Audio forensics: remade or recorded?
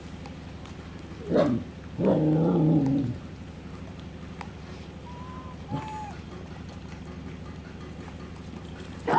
recorded